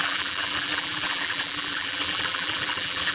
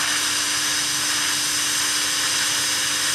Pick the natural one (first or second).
second